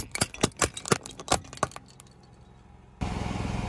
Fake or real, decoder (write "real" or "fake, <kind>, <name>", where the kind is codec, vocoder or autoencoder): real